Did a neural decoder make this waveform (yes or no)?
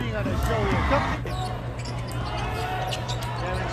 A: no